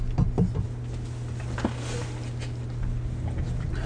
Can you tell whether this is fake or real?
real